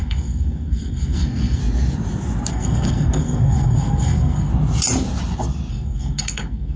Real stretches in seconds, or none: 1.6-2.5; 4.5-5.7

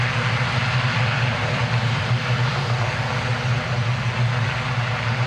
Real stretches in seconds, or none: 0.0-0.6; 2.5-5.3